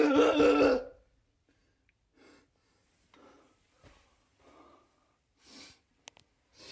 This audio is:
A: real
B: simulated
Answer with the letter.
A